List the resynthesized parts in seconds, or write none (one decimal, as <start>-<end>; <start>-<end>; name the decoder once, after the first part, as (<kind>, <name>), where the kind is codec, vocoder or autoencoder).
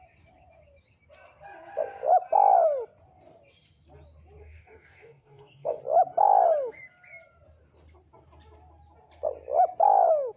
4.4-5.8 (codec, DAC)